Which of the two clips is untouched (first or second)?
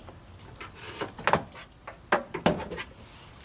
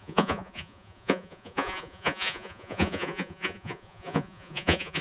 first